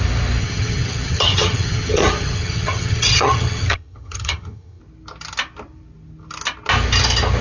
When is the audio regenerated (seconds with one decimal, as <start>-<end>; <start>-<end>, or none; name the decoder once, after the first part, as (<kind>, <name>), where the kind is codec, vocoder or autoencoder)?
0.4-4.8 (vocoder, HiFi-GAN)